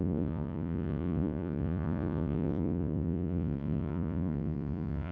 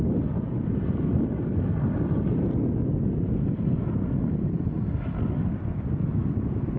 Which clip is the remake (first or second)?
first